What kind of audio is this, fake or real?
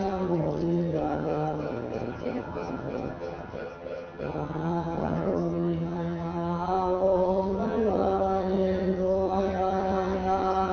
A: fake